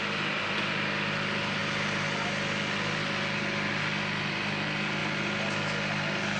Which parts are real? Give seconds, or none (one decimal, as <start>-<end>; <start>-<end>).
0.0-6.4